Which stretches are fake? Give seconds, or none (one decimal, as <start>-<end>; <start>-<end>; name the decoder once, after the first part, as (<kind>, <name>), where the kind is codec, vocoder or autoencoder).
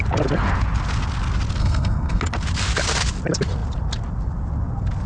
1.6-2.2 (codec, SNAC)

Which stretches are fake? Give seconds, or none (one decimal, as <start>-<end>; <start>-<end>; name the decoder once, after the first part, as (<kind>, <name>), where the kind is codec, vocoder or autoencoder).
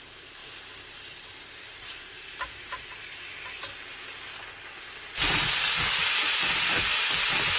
none